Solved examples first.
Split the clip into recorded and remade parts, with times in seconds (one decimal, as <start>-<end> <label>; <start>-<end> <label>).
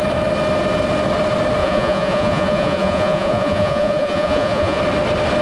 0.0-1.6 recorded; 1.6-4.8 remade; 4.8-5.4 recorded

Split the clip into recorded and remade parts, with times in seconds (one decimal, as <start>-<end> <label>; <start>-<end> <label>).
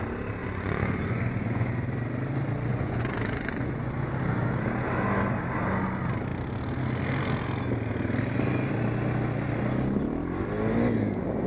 0.0-0.4 recorded; 0.4-1.7 remade; 1.7-2.7 recorded; 2.7-4.1 remade; 4.1-11.5 recorded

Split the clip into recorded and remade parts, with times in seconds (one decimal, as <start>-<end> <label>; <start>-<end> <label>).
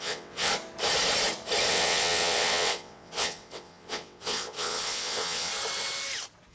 0.0-0.5 remade; 0.5-1.7 recorded; 1.7-5.5 remade; 5.5-6.5 recorded